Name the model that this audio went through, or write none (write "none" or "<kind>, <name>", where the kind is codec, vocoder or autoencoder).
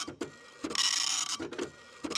none